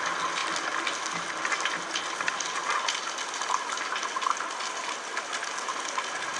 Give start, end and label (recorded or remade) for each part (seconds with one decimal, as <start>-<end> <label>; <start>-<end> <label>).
0.0-6.4 recorded